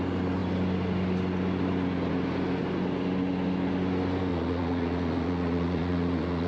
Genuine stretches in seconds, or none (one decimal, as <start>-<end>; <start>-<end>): 0.0-4.3